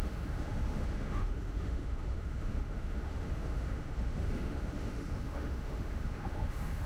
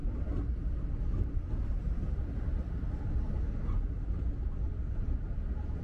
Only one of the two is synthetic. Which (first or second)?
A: first